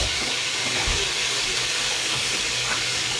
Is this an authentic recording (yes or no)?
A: no